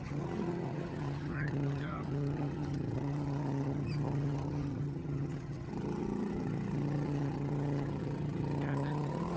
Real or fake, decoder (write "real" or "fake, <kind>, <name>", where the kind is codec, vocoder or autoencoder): fake, vocoder, HiFi-GAN